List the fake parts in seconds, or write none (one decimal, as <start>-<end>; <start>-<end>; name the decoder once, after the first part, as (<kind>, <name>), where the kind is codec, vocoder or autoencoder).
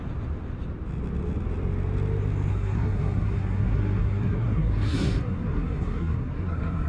2.5-6.9 (codec, SNAC)